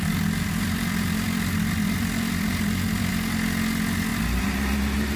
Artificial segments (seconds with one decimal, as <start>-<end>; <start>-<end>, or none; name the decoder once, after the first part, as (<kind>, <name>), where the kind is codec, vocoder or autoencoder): 0.0-3.1 (vocoder, BigVGAN v2)